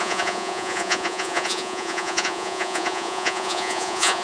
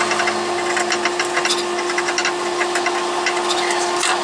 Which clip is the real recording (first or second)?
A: second